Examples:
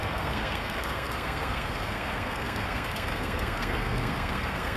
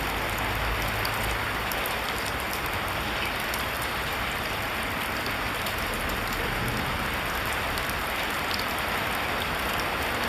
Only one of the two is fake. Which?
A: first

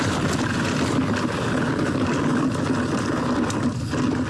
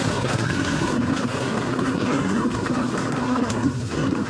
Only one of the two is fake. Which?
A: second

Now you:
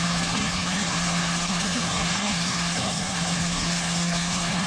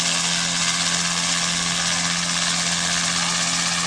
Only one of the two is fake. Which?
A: first